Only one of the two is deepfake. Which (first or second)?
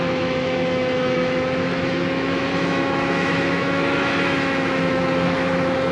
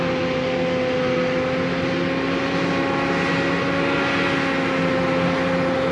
first